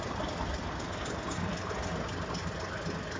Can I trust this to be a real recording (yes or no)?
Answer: yes